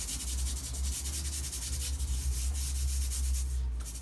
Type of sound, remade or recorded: recorded